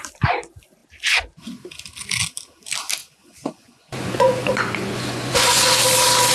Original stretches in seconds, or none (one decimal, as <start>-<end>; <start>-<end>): 0.0-3.0; 5.7-6.3